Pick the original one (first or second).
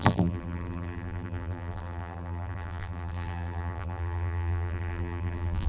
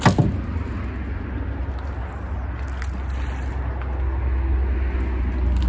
second